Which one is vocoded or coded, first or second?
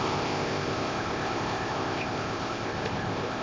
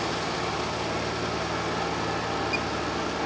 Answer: first